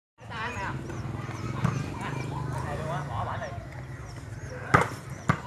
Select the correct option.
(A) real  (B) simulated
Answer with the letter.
A